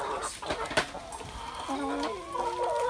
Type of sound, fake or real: real